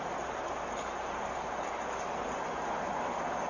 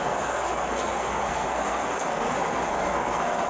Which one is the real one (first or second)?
first